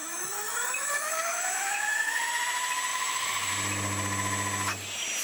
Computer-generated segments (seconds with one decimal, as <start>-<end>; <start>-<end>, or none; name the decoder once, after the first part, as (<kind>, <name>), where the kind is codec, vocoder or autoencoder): 0.0-2.3 (autoencoder, DAC-VAE); 2.9-3.5